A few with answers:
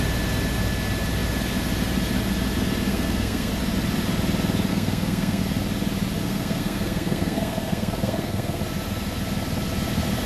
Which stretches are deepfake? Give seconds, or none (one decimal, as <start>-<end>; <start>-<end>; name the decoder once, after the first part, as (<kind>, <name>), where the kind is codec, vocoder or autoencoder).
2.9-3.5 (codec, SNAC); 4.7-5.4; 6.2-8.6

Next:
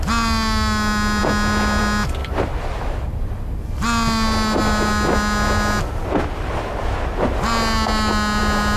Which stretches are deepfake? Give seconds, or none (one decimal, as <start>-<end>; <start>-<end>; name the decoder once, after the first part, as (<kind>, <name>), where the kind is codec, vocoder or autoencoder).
2.2-3.6 (vocoder, BigVGAN v2)

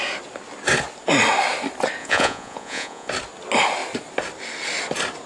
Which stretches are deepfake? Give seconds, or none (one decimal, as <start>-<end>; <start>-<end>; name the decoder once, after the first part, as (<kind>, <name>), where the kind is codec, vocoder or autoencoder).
2.0-3.1 (vocoder, Vocos)

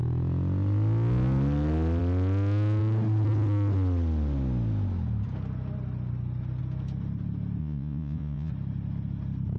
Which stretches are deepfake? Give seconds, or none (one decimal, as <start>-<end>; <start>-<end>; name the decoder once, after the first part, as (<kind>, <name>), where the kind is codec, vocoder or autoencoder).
7.6-8.5 (vocoder, Vocos)